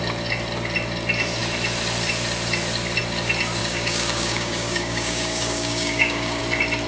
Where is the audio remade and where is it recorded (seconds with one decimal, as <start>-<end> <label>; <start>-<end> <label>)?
0.0-3.6 recorded; 3.6-6.4 remade; 6.4-6.9 recorded

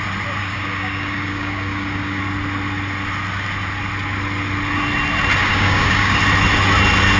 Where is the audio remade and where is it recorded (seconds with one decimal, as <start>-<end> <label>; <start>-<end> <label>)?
0.0-0.4 recorded; 0.4-2.2 remade; 2.2-5.4 recorded; 5.4-6.2 remade; 6.2-7.2 recorded

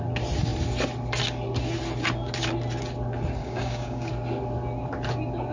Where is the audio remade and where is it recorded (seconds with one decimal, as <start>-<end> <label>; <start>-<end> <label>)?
0.0-3.4 recorded; 3.4-4.1 remade; 4.1-5.5 recorded

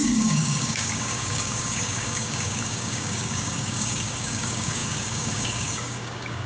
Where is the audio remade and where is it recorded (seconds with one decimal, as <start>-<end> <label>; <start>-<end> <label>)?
0.0-6.5 remade

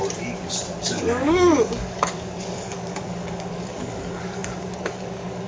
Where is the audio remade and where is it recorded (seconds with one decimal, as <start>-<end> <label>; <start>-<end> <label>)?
0.0-0.8 recorded; 0.8-5.5 remade